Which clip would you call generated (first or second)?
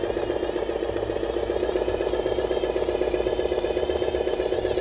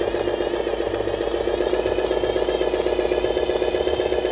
first